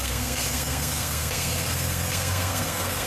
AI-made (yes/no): yes